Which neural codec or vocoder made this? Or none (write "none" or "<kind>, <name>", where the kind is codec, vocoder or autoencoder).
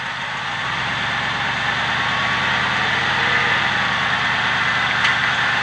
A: none